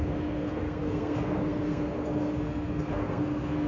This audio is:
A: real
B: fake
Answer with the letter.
B